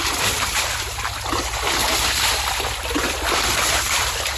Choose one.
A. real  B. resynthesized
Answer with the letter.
B